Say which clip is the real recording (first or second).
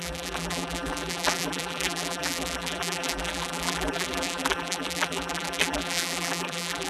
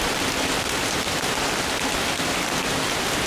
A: second